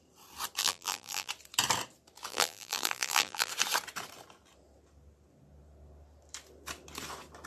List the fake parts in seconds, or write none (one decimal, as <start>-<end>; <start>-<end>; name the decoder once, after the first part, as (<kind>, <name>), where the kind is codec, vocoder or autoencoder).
0.6-1.3 (vocoder, BigVGAN v2); 2.3-3.5